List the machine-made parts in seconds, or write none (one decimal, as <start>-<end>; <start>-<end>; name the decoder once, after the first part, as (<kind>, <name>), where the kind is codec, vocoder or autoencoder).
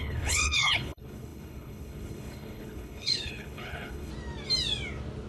0.0-4.1 (codec, HILCodec)